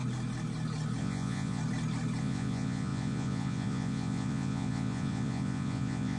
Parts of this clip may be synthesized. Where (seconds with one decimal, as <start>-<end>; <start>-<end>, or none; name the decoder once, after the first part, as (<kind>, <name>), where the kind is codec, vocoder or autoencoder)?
1.0-1.6 (vocoder, Vocos); 2.2-6.2